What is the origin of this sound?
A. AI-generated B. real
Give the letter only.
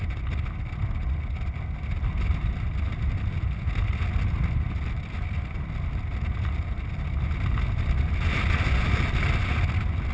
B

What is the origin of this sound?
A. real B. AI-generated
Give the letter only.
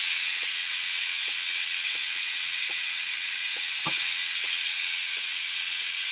B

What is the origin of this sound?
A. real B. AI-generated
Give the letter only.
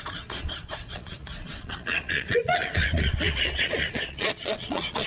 B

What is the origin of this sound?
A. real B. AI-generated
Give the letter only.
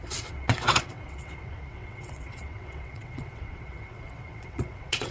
B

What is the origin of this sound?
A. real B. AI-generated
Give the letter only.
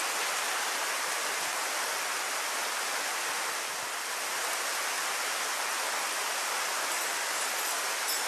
A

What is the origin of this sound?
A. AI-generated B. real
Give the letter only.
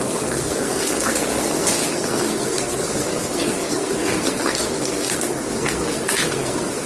A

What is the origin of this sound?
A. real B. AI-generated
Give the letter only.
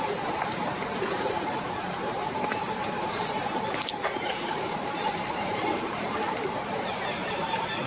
B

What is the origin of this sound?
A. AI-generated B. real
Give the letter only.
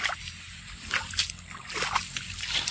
B